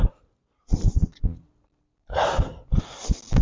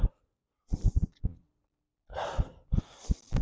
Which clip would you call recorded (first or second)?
first